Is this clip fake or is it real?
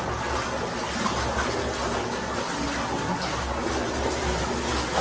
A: real